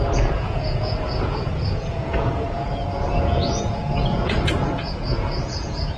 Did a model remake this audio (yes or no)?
yes